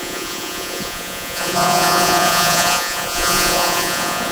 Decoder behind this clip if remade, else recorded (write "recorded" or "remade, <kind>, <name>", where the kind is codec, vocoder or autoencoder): remade, vocoder, Vocos